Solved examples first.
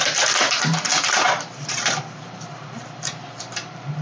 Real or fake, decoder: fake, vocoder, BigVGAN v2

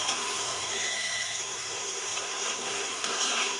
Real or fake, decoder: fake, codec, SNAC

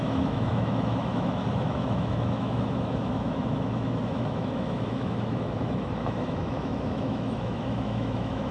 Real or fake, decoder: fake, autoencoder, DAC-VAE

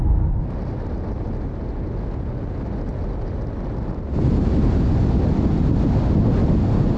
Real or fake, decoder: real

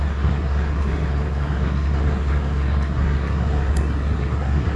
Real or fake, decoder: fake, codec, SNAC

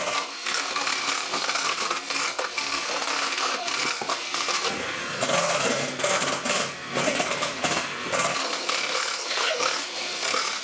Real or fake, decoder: fake, codec, SNAC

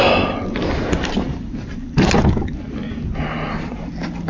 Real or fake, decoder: real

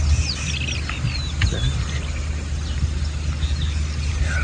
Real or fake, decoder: real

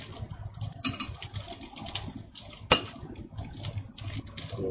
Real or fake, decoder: real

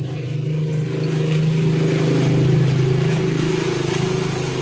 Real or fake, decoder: real